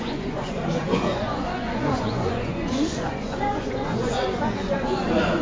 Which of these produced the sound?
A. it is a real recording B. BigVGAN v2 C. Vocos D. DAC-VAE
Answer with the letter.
C